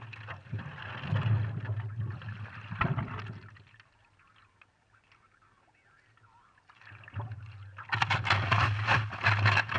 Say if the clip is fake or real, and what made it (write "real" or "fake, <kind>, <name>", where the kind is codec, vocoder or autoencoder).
real